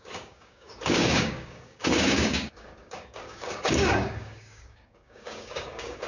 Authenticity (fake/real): fake